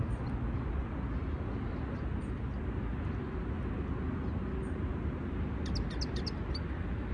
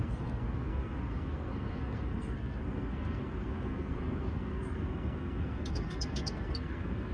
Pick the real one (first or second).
first